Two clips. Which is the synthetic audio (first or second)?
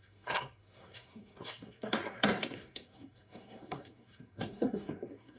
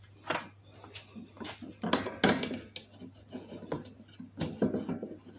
first